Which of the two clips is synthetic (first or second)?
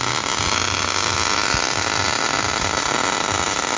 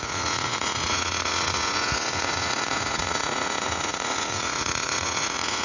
second